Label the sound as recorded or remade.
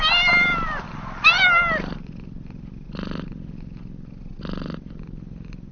recorded